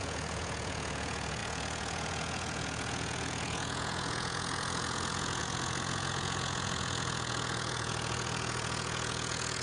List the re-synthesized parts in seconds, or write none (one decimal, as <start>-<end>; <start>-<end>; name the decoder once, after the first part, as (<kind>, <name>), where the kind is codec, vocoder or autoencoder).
0.0-9.6 (vocoder, Vocos)